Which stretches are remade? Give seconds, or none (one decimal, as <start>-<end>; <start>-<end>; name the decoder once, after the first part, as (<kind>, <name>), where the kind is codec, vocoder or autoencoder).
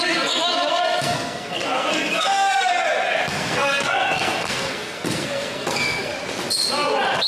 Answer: 0.0-2.7 (codec, SNAC); 3.3-6.1